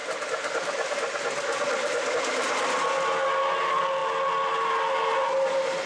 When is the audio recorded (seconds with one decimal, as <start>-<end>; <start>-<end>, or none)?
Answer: 2.1-5.9